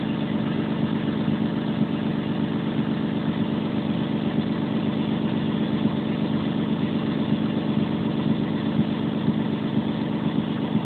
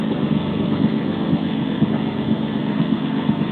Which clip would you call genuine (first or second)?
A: first